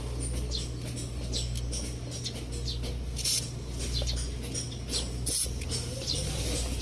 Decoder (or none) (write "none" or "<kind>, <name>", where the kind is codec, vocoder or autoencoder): none